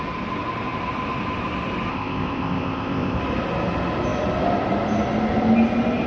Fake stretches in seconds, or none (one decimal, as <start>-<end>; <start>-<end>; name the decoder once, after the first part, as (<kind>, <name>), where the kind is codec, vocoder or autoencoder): 1.9-3.2 (codec, ZipCodec)